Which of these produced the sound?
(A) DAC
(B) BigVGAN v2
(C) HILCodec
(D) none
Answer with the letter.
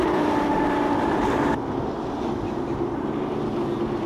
D